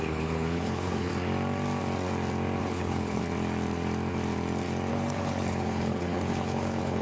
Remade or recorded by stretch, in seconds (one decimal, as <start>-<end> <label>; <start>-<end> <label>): 0.0-1.1 remade; 1.1-2.6 recorded; 2.6-3.2 remade; 3.2-4.9 recorded; 4.9-7.0 remade